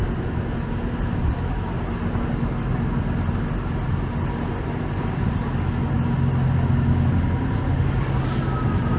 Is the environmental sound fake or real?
real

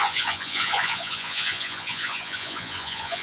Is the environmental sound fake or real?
fake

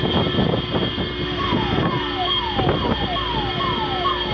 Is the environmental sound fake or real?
real